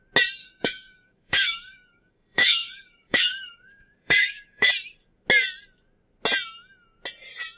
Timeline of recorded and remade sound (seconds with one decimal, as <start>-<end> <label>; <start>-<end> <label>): 0.0-0.4 recorded; 0.4-4.7 remade; 4.7-7.6 recorded

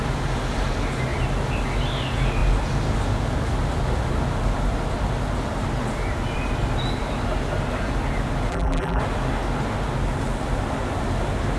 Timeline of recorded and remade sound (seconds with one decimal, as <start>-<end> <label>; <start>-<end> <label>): 0.0-8.5 recorded; 8.5-9.0 remade; 9.0-11.6 recorded

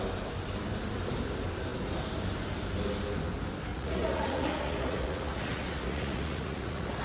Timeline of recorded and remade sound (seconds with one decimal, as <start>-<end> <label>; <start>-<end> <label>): 0.0-3.7 recorded; 3.7-7.0 remade

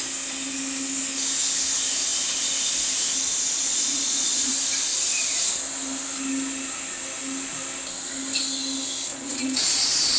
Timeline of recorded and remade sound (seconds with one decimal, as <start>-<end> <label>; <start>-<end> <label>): 0.0-3.6 recorded; 3.6-4.5 remade; 4.5-9.1 recorded; 9.1-10.2 remade

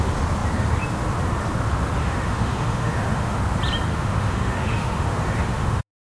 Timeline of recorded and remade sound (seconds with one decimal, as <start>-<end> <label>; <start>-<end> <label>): 0.0-2.0 recorded; 2.0-3.4 remade; 3.4-3.9 recorded; 3.9-5.8 remade; 5.8-6.2 recorded

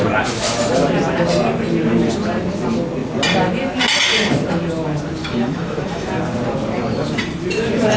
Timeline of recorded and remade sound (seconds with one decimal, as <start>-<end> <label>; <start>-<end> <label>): 0.0-5.2 recorded; 5.2-6.2 remade; 6.2-8.0 recorded

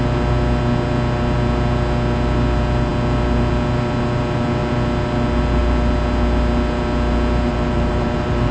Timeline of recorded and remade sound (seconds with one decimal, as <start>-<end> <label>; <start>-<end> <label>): 0.0-7.5 recorded; 7.5-8.5 remade

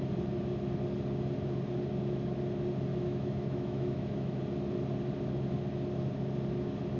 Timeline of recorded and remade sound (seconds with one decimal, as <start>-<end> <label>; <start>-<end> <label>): 0.0-2.9 recorded; 2.9-4.4 remade; 4.4-7.0 recorded